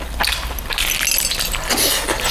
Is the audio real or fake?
real